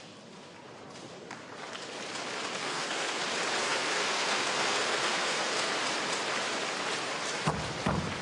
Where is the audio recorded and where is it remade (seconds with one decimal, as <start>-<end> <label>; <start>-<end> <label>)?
0.0-2.6 recorded; 2.6-3.2 remade; 3.2-3.6 recorded; 3.6-5.7 remade; 5.7-8.2 recorded